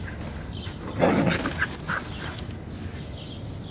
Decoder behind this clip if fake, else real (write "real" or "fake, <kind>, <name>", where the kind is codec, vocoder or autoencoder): real